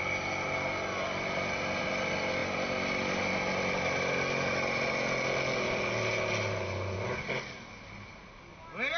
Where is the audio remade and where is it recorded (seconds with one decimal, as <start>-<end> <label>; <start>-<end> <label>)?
0.0-9.0 recorded